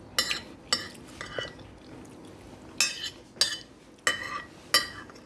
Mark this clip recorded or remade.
recorded